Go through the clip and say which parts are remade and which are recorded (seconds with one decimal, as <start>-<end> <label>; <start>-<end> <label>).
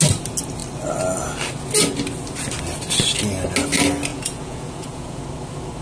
0.0-4.1 recorded; 4.1-5.2 remade; 5.2-5.8 recorded